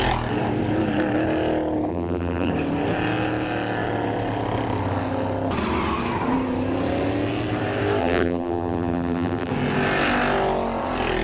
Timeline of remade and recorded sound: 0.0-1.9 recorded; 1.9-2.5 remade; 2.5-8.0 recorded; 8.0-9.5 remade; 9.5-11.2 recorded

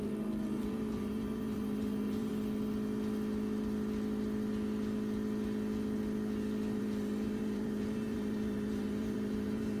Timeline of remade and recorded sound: 0.0-2.3 remade; 2.3-6.8 recorded; 6.8-9.8 remade

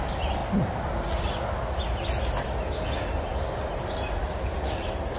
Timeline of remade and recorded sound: 0.0-4.2 recorded; 4.2-5.2 remade

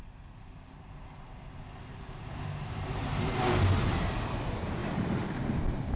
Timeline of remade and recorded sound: 0.0-4.8 remade; 4.8-6.0 recorded

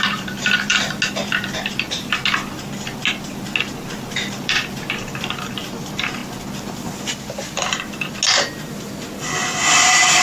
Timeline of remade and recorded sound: 0.0-0.7 remade; 0.7-1.2 recorded; 1.2-2.1 remade; 2.1-4.3 recorded; 4.3-6.2 remade; 6.2-9.7 recorded; 9.7-10.2 remade

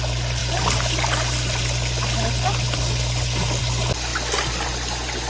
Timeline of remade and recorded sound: 0.0-5.3 recorded

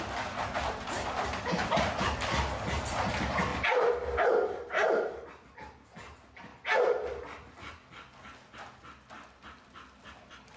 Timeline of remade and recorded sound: 0.0-10.6 recorded